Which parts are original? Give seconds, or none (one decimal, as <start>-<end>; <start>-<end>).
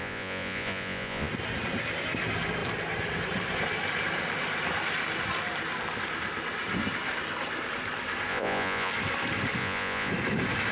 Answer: 1.3-8.3; 8.9-9.6; 10.1-10.7